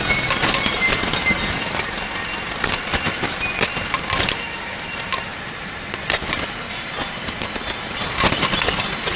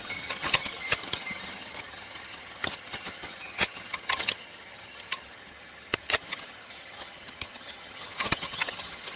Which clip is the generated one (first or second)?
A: second